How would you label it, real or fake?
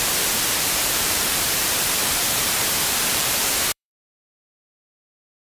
fake